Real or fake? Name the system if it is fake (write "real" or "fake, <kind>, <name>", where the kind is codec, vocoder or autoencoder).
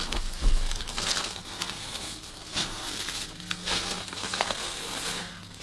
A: fake, codec, SNAC